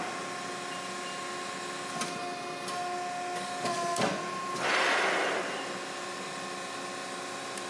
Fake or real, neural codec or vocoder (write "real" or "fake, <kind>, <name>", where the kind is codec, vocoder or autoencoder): real